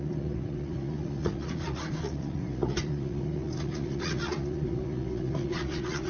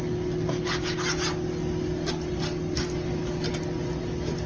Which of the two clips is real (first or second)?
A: second